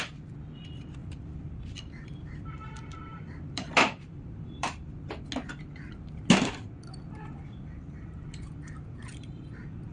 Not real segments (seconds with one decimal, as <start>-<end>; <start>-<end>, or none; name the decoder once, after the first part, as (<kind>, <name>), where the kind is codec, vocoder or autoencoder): 1.0-1.9 (vocoder, BigVGAN v2); 3.1-5.0